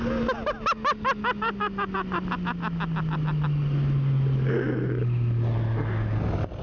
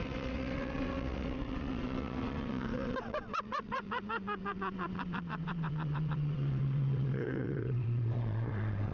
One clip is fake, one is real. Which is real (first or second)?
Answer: first